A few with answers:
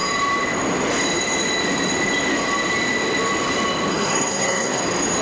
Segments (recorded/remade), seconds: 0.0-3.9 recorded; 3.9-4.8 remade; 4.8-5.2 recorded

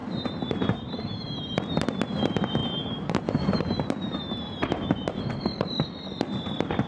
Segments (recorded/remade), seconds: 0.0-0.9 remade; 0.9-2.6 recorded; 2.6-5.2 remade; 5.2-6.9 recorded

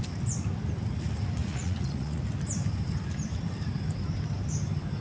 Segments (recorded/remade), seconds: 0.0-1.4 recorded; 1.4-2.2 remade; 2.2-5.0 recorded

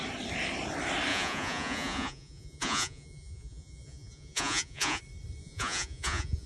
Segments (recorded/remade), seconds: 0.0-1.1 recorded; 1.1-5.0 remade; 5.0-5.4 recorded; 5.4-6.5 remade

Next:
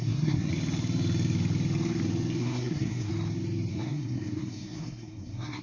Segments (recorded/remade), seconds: 0.0-0.5 remade; 0.5-2.4 recorded; 2.4-3.1 remade; 3.1-3.7 recorded; 3.7-5.6 remade

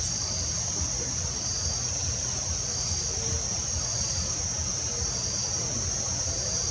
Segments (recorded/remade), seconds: 0.0-6.7 recorded